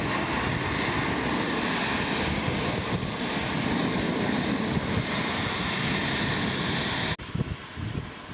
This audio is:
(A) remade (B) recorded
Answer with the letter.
B